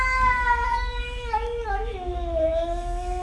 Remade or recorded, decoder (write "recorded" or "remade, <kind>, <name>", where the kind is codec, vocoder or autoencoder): remade, autoencoder, DAC-VAE